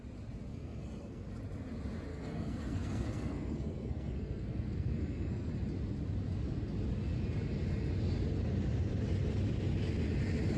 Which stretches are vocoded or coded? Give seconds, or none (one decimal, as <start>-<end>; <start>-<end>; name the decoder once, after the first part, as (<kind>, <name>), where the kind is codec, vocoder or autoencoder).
0.5-1.3 (codec, SNAC); 2.1-5.5